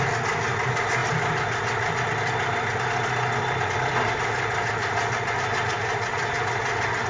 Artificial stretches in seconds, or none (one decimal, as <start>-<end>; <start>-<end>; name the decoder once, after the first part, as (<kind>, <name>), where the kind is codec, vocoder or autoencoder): none